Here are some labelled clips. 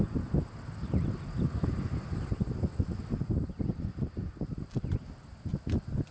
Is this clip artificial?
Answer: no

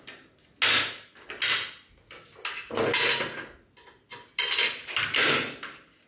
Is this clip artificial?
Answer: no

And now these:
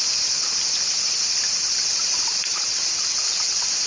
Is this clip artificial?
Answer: no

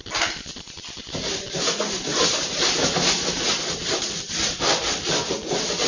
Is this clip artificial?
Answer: no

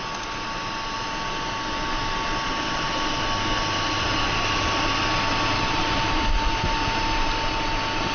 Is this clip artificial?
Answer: no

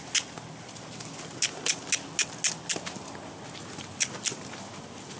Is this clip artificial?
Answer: no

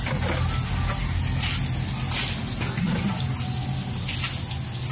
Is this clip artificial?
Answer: no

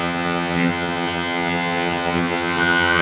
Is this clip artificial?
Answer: yes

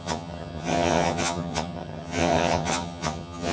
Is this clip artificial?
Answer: yes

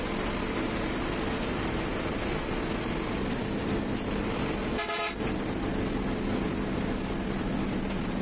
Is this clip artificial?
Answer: no